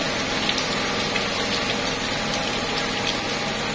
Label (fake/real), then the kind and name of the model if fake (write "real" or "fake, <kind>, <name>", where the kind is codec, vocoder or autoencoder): real